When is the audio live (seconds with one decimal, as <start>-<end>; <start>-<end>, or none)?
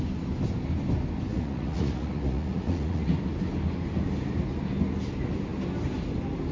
0.0-1.3; 3.1-6.5